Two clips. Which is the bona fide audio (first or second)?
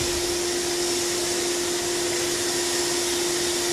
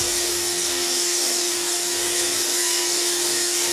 first